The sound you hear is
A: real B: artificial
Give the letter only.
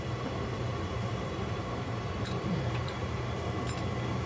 B